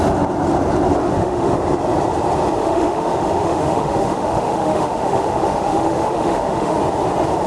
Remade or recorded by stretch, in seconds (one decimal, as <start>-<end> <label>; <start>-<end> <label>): 0.0-1.0 recorded; 1.0-1.6 remade; 1.6-2.6 recorded; 2.6-6.8 remade; 6.8-7.5 recorded

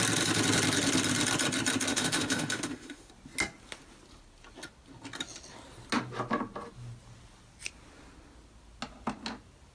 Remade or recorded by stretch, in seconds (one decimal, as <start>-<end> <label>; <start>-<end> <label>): 0.0-1.9 recorded; 1.9-3.1 remade; 3.1-9.7 recorded

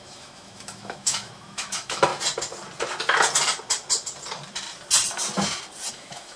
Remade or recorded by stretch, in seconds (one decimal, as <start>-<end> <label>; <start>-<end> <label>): 0.0-2.1 remade; 2.1-5.9 recorded; 5.9-6.4 remade